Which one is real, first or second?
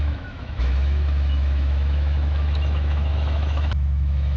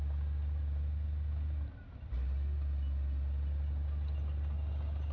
second